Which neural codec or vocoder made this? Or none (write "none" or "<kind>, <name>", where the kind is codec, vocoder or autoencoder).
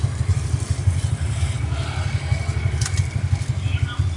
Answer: none